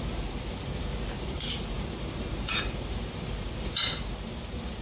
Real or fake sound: fake